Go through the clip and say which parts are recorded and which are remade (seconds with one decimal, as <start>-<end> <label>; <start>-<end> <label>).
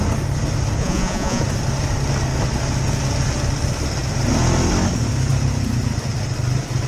0.0-0.8 recorded; 0.8-1.4 remade; 1.4-6.9 recorded